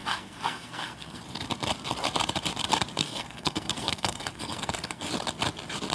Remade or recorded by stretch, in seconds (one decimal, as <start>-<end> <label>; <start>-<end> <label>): 0.0-1.2 remade; 1.2-3.0 recorded; 3.0-5.1 remade; 5.1-5.9 recorded